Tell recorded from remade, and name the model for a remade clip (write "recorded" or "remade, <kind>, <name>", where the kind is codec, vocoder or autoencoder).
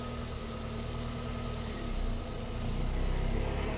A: recorded